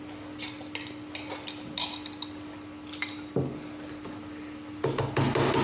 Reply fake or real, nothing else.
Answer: real